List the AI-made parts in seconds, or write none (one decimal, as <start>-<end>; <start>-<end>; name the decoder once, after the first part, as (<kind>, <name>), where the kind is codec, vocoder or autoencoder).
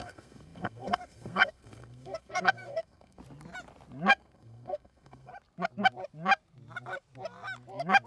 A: 0.0-3.2 (codec, SNAC); 4.1-5.3